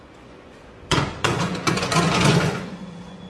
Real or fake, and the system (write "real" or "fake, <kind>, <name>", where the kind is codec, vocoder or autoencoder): fake, vocoder, Vocos